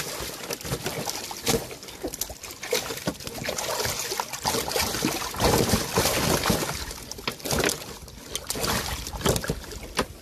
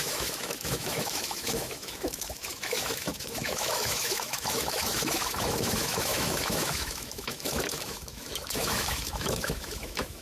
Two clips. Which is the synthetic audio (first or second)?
second